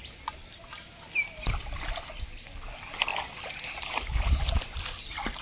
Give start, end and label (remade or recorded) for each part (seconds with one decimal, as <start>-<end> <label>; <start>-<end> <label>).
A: 0.0-5.4 recorded